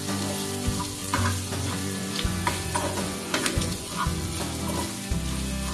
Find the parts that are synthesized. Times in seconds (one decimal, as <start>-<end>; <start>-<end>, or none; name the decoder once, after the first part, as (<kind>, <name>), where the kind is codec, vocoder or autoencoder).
1.0-4.4 (vocoder, Vocos)